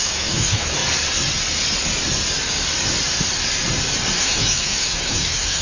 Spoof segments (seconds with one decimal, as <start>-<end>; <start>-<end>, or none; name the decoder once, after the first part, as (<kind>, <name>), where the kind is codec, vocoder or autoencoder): 0.0-0.8 (autoencoder, DAC-VAE); 4.2-5.6